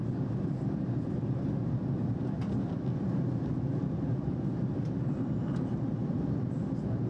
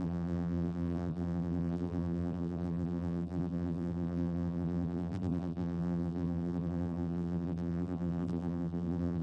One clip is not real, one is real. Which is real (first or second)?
first